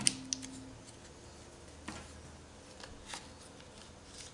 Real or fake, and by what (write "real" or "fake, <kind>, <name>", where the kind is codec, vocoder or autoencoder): real